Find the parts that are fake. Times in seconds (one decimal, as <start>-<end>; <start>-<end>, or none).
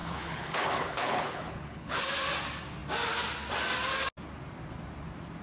0.0-2.0